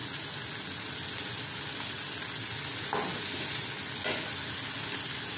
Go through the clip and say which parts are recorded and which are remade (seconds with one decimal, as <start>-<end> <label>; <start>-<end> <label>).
0.0-5.4 recorded